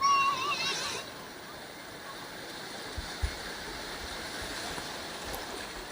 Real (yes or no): yes